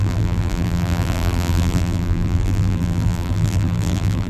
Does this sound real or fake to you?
fake